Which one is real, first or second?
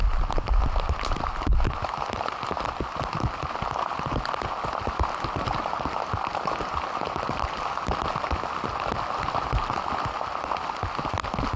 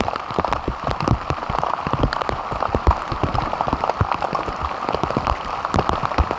first